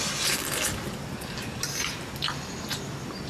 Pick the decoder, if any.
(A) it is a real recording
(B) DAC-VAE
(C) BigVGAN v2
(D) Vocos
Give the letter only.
A